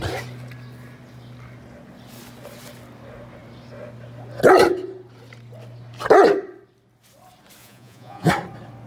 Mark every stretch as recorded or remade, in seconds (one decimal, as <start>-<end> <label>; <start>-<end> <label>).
0.0-7.6 recorded; 7.6-8.3 remade; 8.3-8.9 recorded